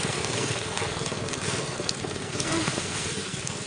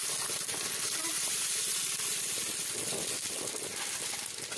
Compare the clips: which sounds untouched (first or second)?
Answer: second